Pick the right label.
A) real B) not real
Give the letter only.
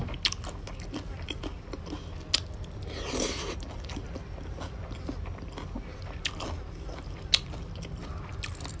A